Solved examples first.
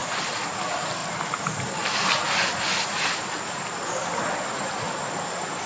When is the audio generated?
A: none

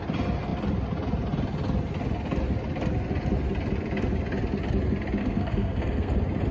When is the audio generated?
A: 5.2-6.1